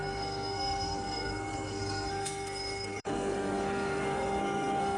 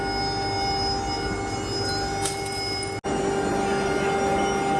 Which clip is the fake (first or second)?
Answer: first